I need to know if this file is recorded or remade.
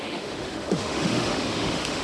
remade